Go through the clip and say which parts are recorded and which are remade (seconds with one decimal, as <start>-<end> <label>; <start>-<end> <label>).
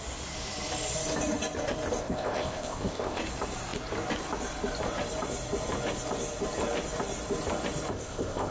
0.0-2.0 recorded; 2.0-3.2 remade; 3.2-7.9 recorded; 7.9-8.5 remade